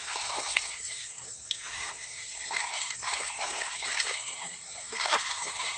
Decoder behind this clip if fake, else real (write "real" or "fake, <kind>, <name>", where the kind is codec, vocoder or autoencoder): fake, codec, SNAC